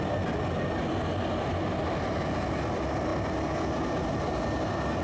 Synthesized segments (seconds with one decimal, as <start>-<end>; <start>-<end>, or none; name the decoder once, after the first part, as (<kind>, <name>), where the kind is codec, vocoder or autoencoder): none